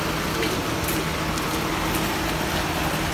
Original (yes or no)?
yes